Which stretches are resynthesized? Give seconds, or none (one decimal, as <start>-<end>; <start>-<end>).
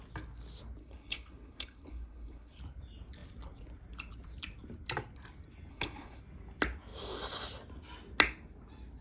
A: 0.8-2.6; 5.7-6.2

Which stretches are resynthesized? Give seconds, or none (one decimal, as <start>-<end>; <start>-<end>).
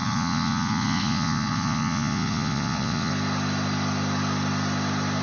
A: 0.0-3.1